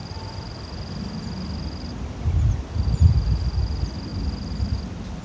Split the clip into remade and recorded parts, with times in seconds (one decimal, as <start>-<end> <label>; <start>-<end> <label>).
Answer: 0.0-5.2 recorded

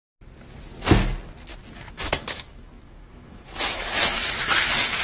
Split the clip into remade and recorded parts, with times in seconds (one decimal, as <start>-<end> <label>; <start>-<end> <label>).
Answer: 0.0-1.5 recorded; 1.5-4.5 remade; 4.5-5.0 recorded

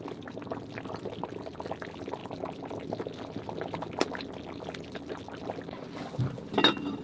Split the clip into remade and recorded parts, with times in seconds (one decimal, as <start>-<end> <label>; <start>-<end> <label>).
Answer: 0.0-7.0 recorded

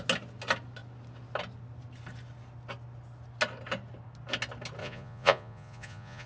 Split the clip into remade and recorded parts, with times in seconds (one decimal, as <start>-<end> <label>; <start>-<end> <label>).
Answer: 0.0-4.8 recorded; 4.8-6.3 remade

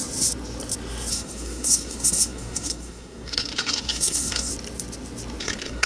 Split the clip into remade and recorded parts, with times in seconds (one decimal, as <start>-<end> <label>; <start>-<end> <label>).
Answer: 0.0-1.1 recorded; 1.1-4.5 remade; 4.5-5.4 recorded; 5.4-5.9 remade

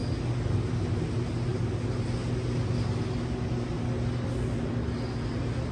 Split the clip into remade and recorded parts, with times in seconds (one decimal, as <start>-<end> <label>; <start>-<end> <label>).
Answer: 0.0-5.7 recorded